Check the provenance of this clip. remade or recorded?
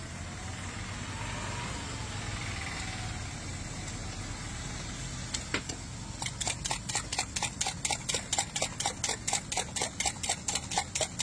recorded